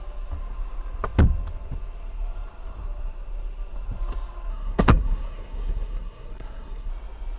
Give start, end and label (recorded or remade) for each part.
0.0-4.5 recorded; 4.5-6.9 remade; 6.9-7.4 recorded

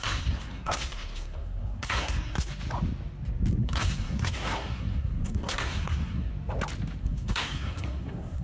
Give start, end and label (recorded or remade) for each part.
0.0-2.5 remade; 2.5-3.6 recorded; 3.6-6.3 remade; 6.3-7.0 recorded; 7.0-8.4 remade

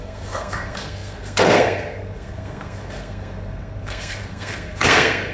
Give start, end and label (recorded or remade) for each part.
0.0-5.3 remade